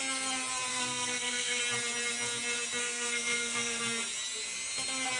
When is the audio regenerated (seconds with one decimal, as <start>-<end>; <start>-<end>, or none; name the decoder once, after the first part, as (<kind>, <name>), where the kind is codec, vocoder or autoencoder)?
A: 0.7-1.6 (codec, SNAC); 2.8-3.8